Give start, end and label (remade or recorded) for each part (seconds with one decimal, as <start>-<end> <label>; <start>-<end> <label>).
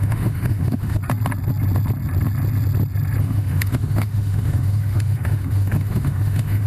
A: 0.0-1.0 remade; 1.0-3.2 recorded; 3.2-6.7 remade